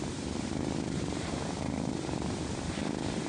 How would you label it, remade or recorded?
remade